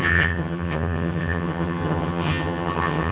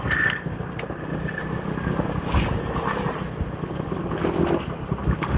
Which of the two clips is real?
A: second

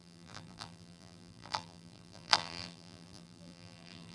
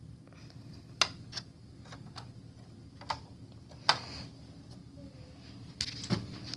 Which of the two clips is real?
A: second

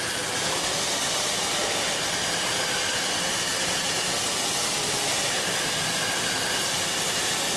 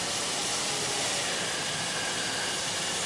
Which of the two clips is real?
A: second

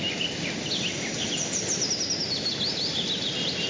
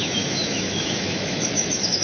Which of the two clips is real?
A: first